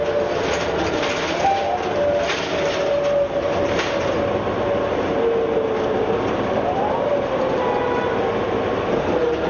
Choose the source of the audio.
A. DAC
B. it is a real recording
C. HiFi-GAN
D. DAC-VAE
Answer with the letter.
B